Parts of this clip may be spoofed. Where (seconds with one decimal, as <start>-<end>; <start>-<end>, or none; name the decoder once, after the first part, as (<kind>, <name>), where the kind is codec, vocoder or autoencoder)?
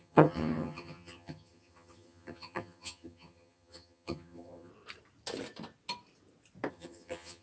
0.0-4.7 (vocoder, HiFi-GAN); 6.7-7.4